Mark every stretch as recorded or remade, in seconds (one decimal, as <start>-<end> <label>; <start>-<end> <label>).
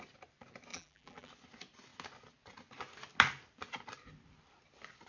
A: 0.0-0.7 recorded; 0.7-1.3 remade; 1.3-5.1 recorded